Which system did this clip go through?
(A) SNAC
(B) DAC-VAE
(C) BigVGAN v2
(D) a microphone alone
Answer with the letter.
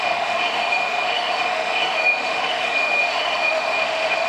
B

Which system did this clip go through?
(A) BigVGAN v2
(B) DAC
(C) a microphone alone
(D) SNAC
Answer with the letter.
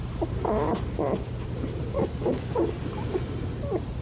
C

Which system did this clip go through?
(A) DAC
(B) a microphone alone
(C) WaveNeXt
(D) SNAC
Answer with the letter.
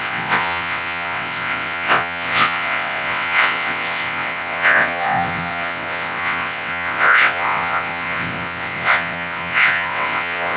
C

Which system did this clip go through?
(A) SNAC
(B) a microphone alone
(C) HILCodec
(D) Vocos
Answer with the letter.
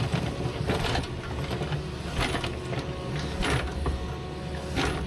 B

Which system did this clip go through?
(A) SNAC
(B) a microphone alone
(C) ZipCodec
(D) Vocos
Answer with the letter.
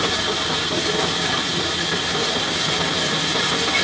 B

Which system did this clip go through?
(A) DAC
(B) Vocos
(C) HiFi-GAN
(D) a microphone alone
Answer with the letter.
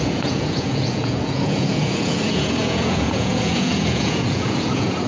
B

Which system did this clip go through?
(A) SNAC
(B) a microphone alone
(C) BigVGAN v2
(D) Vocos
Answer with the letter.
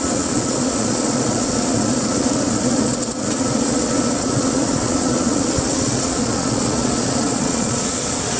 D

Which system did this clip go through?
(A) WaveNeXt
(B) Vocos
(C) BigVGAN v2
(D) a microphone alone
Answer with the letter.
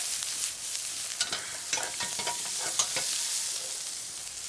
D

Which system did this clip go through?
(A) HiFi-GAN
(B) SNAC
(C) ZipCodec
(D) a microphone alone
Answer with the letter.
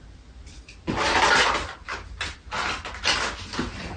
D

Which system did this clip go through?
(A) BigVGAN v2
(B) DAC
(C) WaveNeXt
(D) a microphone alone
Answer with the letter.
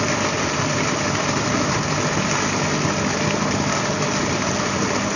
D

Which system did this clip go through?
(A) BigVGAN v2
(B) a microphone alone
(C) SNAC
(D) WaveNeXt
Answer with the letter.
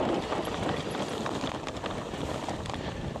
B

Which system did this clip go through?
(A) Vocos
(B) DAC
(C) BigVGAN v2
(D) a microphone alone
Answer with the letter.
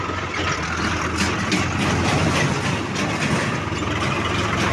D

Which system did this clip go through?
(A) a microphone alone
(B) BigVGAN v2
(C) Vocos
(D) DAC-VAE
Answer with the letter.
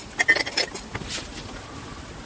A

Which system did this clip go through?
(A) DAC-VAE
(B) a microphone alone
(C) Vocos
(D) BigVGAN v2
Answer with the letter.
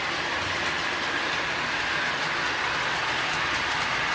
D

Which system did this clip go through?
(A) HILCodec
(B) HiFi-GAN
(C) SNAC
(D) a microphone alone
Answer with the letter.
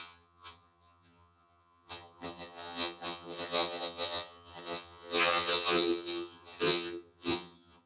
B